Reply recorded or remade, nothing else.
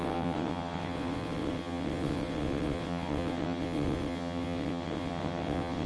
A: remade